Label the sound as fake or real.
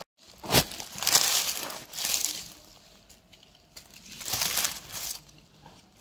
real